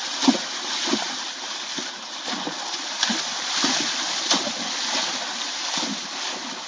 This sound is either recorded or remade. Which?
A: recorded